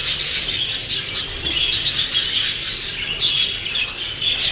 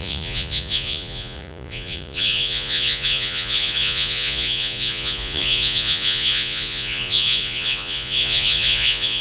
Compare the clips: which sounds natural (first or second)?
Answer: first